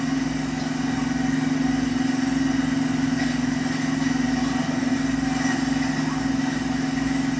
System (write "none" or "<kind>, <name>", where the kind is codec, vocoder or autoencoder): none